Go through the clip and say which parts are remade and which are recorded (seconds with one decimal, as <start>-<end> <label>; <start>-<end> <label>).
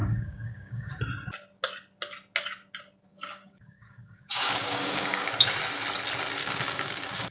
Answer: 0.0-1.0 remade; 1.0-3.1 recorded; 3.1-5.3 remade; 5.3-6.4 recorded; 6.4-7.3 remade